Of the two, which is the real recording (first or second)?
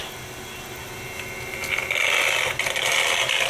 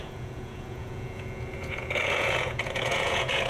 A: first